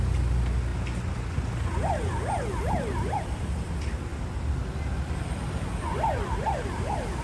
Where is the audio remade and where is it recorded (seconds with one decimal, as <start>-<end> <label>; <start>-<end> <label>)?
0.0-7.2 recorded